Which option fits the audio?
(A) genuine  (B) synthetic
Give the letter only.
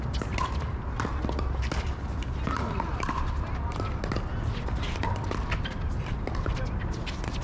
A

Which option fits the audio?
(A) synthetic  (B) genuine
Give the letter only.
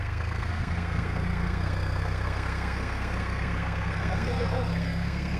A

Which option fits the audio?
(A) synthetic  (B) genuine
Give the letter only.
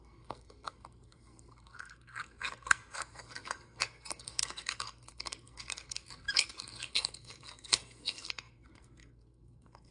A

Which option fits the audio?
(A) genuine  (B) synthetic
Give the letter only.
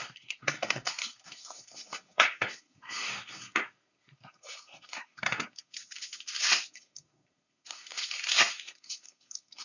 B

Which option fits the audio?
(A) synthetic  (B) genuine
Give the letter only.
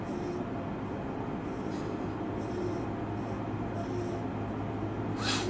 B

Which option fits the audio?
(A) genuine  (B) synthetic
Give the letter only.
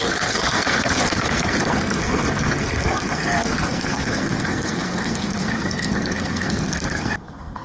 B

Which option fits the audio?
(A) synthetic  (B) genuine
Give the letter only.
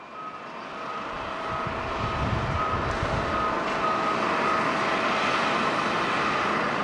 B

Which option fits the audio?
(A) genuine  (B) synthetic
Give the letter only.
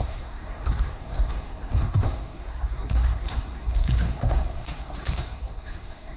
B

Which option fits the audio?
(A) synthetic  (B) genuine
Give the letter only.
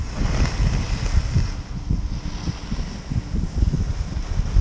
B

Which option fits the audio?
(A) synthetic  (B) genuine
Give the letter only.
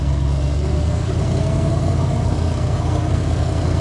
A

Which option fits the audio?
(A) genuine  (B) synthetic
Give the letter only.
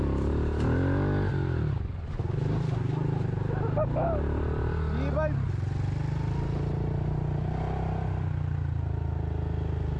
A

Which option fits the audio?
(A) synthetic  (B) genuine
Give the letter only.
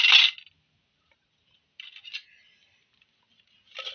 B